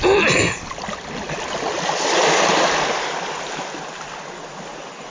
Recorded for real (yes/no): yes